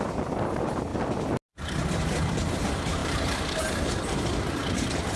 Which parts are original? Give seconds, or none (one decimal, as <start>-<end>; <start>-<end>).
0.0-3.0; 4.2-5.2